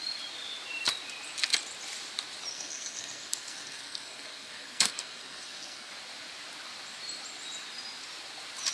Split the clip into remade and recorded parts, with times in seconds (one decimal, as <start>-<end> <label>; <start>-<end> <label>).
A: 0.0-2.5 recorded; 2.5-5.9 remade; 5.9-8.7 recorded